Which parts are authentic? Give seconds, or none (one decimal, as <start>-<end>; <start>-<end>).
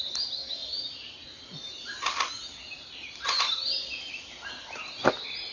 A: 0.0-5.5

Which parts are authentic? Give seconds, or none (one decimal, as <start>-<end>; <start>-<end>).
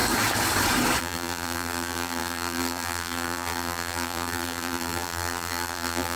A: 0.0-1.0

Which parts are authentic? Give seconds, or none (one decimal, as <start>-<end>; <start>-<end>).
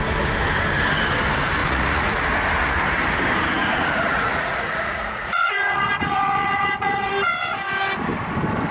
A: 0.0-1.6; 2.2-3.6; 7.1-8.7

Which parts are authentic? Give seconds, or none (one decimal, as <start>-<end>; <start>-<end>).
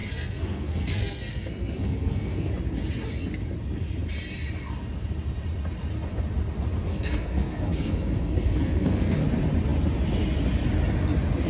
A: 2.5-6.9; 9.2-11.5